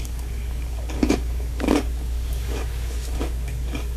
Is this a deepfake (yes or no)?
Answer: yes